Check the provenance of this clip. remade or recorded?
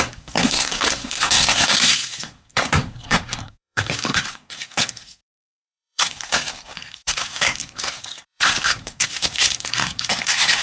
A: remade